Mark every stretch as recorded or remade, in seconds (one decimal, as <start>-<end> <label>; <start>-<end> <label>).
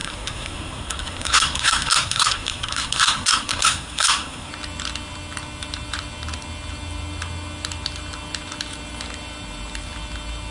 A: 0.0-4.5 remade; 4.5-10.5 recorded